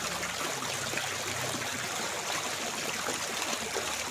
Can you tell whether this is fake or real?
real